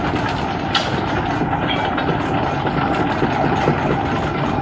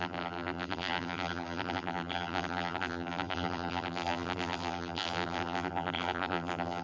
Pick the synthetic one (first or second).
second